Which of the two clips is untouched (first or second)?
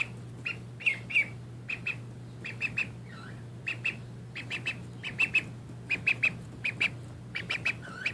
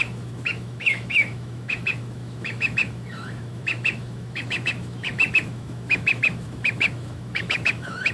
first